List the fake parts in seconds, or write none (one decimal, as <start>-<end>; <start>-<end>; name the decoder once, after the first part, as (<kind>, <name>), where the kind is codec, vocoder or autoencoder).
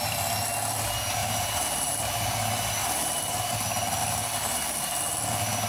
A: 1.2-2.0 (vocoder, BigVGAN v2); 2.8-3.5; 4.0-4.9